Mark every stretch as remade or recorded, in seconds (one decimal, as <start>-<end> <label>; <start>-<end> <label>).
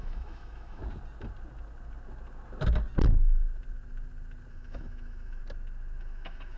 0.0-0.8 remade; 0.8-4.5 recorded; 4.5-5.4 remade; 5.4-6.0 recorded; 6.0-6.6 remade